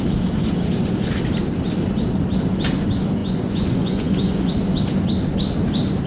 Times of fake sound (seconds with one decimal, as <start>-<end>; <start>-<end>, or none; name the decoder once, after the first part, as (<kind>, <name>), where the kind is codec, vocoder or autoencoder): 3.2-4.5 (vocoder, Vocos)